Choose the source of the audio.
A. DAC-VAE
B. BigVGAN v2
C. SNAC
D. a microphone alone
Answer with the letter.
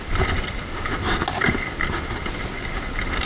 D